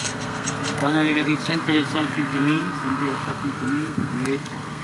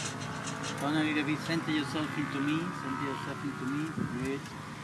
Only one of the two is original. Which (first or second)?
second